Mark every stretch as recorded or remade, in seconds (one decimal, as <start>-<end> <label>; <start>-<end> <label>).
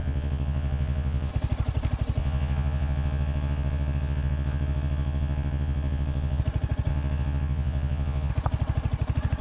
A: 0.0-1.3 remade; 1.3-2.2 recorded; 2.2-6.4 remade; 6.4-6.9 recorded; 6.9-8.3 remade; 8.3-9.4 recorded